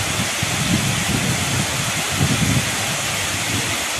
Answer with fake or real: real